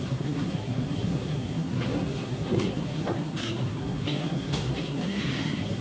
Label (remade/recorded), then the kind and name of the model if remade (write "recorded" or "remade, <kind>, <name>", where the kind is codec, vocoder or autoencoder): remade, codec, SNAC